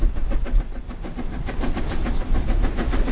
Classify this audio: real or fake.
fake